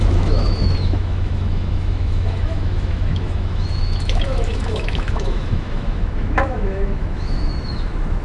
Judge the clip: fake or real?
fake